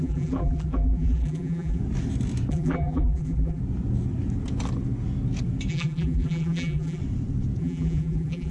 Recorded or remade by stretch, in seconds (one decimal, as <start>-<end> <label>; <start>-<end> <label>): 0.0-1.8 remade; 1.8-2.5 recorded; 2.5-3.6 remade; 3.6-5.7 recorded; 5.7-7.0 remade; 7.0-7.6 recorded; 7.6-8.5 remade